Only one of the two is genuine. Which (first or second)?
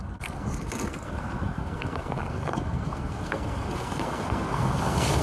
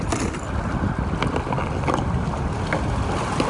second